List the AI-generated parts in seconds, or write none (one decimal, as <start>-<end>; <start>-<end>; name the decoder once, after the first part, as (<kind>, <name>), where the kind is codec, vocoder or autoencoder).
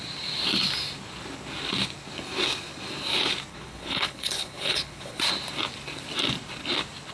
3.5-5.2 (codec, HILCodec)